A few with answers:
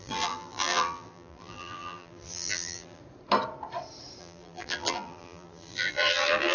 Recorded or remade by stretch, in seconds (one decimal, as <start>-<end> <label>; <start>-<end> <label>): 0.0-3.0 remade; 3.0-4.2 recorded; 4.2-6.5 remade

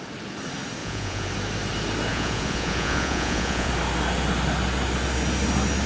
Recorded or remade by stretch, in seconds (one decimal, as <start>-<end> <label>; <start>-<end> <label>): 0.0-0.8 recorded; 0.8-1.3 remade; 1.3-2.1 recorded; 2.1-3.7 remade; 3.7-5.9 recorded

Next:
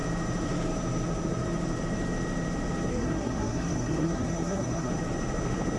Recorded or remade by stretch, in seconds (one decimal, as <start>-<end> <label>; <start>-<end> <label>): 0.0-2.9 recorded; 2.9-4.9 remade; 4.9-5.8 recorded

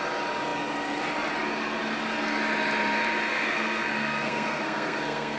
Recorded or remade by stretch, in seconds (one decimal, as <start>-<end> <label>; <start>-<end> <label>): 0.0-3.3 recorded; 3.3-5.4 remade

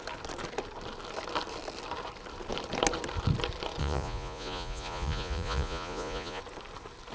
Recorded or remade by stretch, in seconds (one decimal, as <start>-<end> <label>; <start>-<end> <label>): 0.0-3.8 recorded; 3.8-6.4 remade; 6.4-7.1 recorded

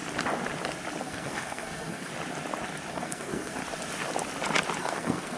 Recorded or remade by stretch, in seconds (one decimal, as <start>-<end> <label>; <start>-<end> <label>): 0.0-1.0 recorded; 1.0-2.1 remade; 2.1-2.9 recorded; 2.9-3.6 remade; 3.6-4.8 recorded; 4.8-5.4 remade

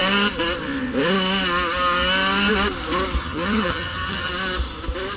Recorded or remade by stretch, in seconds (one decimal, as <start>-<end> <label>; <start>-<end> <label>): 0.0-3.2 recorded; 3.2-4.3 remade; 4.3-5.2 recorded